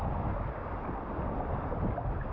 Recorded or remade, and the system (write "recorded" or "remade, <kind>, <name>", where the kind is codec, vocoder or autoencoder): recorded